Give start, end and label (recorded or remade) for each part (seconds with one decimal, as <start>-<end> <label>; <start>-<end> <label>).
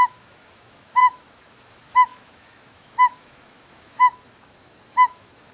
0.0-5.5 remade